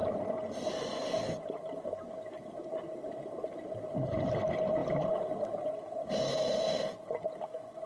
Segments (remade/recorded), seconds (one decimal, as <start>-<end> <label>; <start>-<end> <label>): 0.0-7.9 recorded